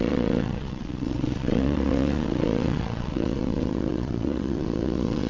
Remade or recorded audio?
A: remade